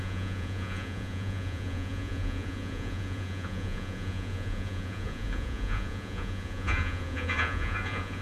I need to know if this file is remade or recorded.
remade